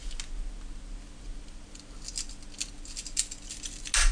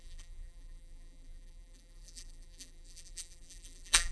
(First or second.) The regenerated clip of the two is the second